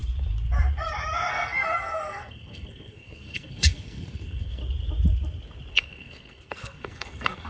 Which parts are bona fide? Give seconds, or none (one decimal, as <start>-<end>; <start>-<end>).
0.0-1.3; 4.6-5.7